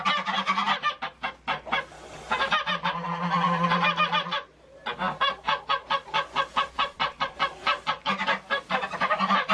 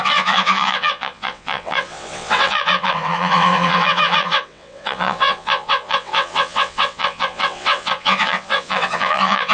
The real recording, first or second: first